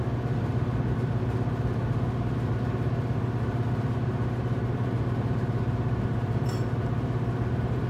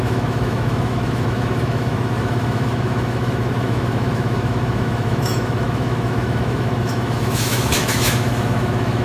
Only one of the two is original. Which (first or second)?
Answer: first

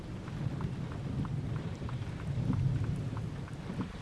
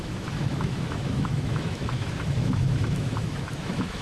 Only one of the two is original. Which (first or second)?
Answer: first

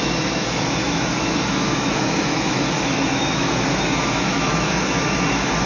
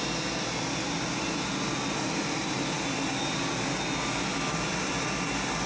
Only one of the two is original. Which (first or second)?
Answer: second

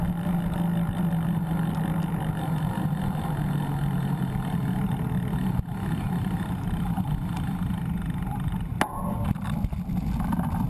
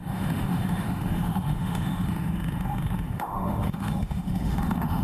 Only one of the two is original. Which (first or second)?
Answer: first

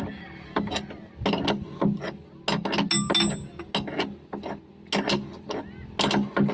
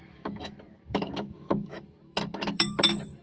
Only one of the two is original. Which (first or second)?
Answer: first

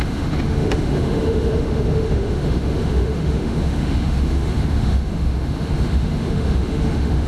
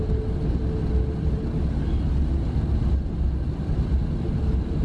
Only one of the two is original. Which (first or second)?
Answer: second